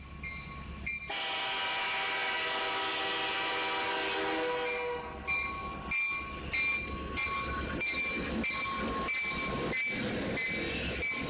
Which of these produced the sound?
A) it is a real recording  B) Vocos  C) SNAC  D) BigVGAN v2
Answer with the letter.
A